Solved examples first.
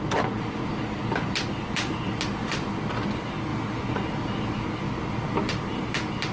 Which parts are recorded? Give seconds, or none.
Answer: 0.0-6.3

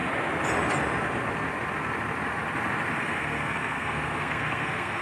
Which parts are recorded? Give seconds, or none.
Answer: 0.0-3.0

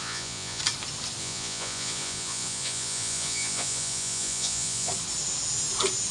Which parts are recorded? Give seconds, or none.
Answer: 0.6-1.2; 4.9-6.1

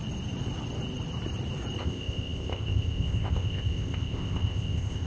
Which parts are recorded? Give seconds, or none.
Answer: 0.0-1.8

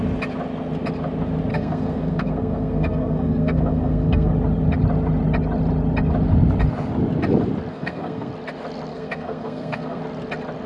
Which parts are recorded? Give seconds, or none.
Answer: 0.0-1.5; 4.3-7.7; 8.3-8.9; 10.0-10.7

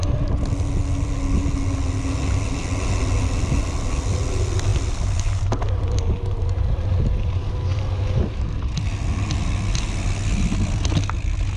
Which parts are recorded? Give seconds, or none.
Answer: 0.0-11.6